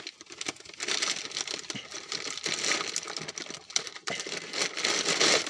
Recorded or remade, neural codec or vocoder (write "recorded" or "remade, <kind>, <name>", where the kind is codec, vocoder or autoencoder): recorded